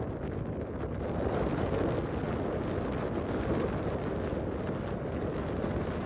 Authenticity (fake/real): real